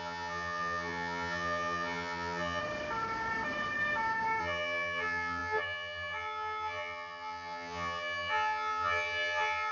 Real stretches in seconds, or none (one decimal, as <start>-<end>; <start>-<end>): 2.6-4.4